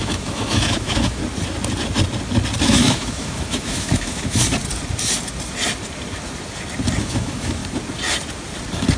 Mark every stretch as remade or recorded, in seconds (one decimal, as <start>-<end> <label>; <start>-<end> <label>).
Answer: 0.0-1.2 remade; 1.2-2.6 recorded; 2.6-4.4 remade; 4.4-7.0 recorded; 7.0-7.6 remade; 7.6-9.0 recorded